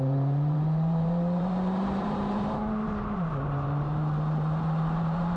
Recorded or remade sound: remade